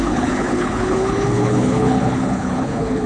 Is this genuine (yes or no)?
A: no